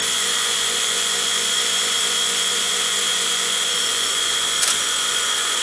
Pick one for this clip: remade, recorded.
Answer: remade